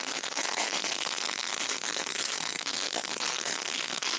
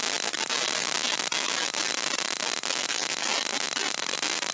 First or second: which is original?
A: second